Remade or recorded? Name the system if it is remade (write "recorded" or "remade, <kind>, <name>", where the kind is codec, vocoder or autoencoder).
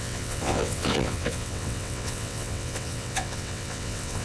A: remade, vocoder, WaveNeXt